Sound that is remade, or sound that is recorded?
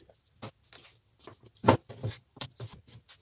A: recorded